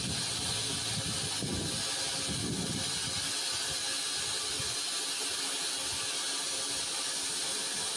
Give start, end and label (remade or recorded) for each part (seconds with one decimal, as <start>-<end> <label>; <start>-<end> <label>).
0.0-8.0 recorded